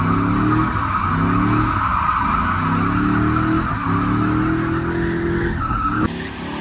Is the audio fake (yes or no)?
no